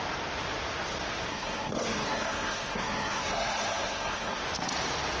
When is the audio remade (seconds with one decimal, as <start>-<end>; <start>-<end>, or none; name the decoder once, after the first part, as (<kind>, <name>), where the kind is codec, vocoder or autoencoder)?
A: 1.3-4.4 (codec, SNAC)